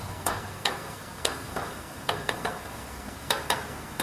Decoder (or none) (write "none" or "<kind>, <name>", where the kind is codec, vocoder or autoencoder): codec, SNAC